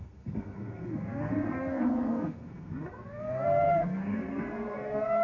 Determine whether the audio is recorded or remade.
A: remade